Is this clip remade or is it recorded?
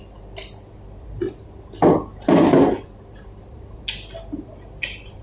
recorded